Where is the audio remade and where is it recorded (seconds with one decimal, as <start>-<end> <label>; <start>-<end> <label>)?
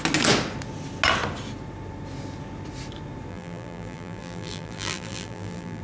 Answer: 0.0-3.3 recorded; 3.3-5.8 remade